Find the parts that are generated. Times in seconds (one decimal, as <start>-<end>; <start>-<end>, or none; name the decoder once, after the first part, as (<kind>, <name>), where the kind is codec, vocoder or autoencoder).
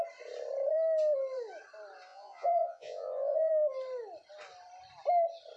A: 2.1-3.5 (vocoder, Vocos)